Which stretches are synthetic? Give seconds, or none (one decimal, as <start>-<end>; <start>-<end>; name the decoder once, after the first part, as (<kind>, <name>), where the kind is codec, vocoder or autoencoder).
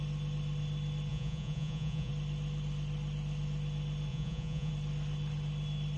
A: 1.1-2.1 (vocoder, Vocos); 4.1-4.7